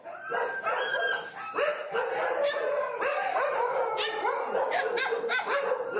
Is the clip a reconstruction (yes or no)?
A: no